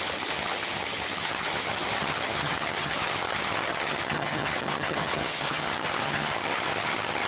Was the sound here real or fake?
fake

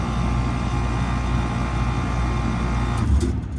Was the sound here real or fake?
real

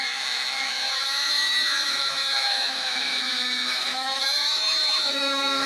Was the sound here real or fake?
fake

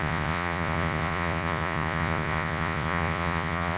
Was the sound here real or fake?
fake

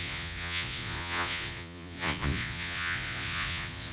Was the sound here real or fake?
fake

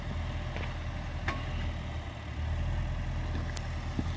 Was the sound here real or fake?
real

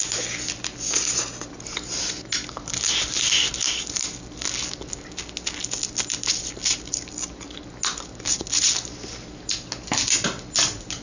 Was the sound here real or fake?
real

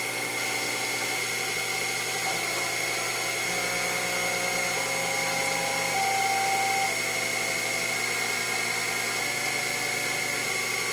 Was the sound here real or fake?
real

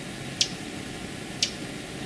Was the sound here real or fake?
real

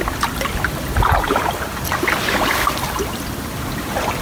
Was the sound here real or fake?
real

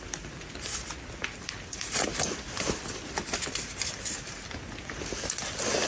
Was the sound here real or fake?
real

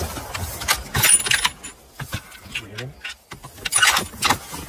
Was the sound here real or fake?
real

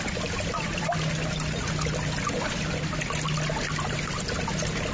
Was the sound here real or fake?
real